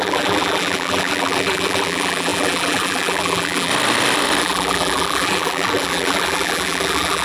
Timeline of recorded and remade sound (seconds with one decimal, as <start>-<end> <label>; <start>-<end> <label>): 0.0-3.7 remade; 3.7-4.4 recorded; 4.4-7.2 remade